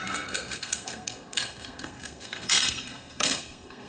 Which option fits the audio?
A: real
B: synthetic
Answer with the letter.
B